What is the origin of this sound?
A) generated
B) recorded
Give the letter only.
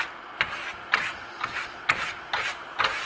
B